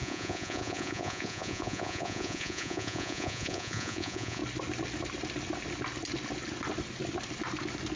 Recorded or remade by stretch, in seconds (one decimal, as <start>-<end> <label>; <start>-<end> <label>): 0.0-4.4 remade; 4.4-8.0 recorded